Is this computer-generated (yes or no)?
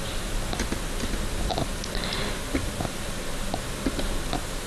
no